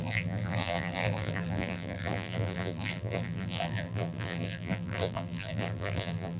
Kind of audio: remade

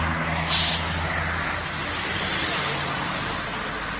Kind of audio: recorded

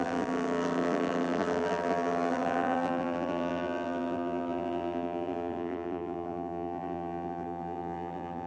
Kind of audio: remade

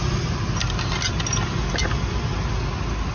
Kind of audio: recorded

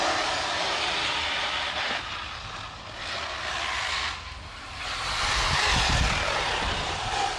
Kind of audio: recorded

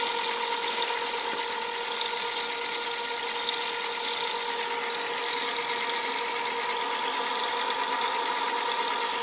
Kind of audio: recorded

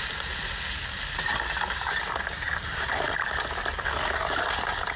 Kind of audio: recorded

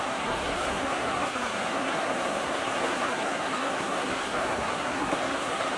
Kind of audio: remade